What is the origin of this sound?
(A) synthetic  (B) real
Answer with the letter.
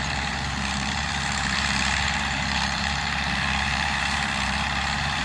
A